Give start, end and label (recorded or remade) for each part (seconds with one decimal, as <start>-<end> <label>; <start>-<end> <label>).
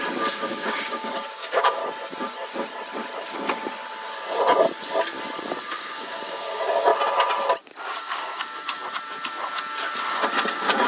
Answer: 0.0-1.8 remade; 1.8-5.7 recorded; 5.7-6.9 remade; 6.9-7.6 recorded; 7.6-8.8 remade; 8.8-10.5 recorded; 10.5-10.9 remade